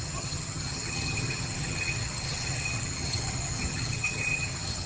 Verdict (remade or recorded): remade